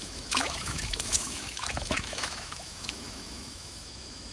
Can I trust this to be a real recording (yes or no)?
no